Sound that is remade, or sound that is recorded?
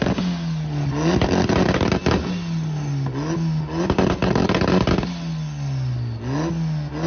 recorded